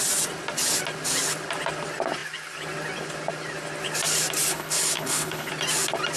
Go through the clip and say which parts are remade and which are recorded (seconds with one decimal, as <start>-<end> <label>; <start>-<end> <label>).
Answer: 0.0-4.5 recorded; 4.5-5.5 remade; 5.5-6.2 recorded